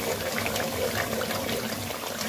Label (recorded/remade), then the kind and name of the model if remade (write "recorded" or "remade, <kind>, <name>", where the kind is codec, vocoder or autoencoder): recorded